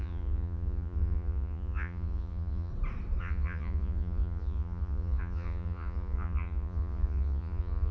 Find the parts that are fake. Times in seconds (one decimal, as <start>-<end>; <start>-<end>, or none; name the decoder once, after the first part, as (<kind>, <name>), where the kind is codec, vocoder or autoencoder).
0.0-2.7 (vocoder, Vocos); 3.2-7.9